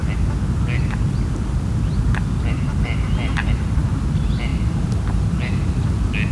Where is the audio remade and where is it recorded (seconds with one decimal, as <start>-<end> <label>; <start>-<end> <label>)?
0.0-6.3 recorded